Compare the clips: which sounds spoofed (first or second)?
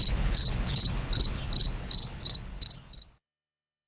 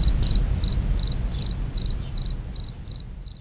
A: first